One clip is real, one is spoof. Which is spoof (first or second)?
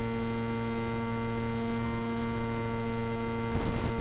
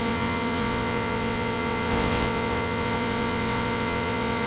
second